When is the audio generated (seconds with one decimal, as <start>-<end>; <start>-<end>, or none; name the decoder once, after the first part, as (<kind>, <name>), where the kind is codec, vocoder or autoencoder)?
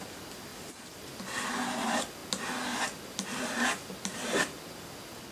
none